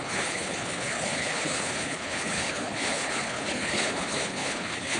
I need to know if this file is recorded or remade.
remade